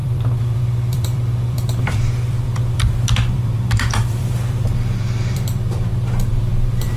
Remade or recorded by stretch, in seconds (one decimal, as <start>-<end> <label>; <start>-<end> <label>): 0.0-7.0 remade